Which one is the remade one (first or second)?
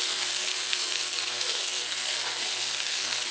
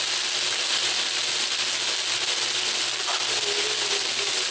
first